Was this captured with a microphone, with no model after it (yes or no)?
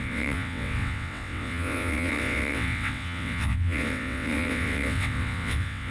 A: no